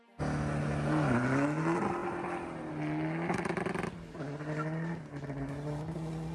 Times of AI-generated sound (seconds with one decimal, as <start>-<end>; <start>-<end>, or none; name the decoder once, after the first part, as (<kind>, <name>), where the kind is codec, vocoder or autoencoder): none